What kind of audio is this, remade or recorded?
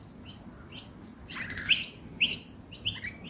recorded